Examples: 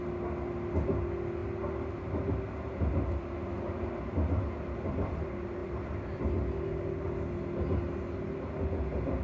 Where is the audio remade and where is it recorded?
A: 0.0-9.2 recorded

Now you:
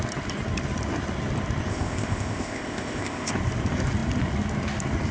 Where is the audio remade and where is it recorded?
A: 0.0-1.7 recorded; 1.7-3.3 remade; 3.3-5.1 recorded

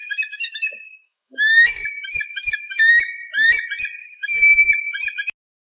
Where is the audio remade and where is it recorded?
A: 0.0-3.0 remade; 3.0-4.0 recorded; 4.0-4.6 remade; 4.6-5.6 recorded

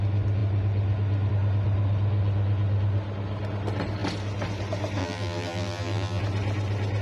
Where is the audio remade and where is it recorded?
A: 0.0-5.0 recorded; 5.0-6.2 remade; 6.2-7.0 recorded

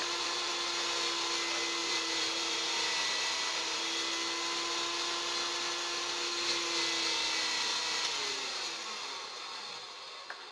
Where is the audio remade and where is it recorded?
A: 0.0-0.5 remade; 0.5-1.8 recorded; 1.8-3.8 remade; 3.8-10.5 recorded

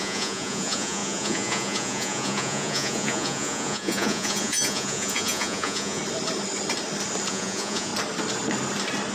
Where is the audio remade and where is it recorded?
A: 0.0-6.0 remade; 6.0-7.3 recorded; 7.3-7.9 remade; 7.9-9.1 recorded